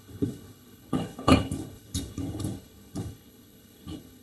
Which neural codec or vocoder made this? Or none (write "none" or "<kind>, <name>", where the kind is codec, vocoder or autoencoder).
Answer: codec, HILCodec